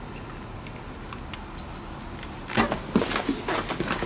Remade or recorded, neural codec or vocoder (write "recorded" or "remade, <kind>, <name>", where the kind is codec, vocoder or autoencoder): recorded